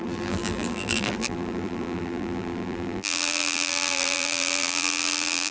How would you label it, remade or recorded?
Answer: remade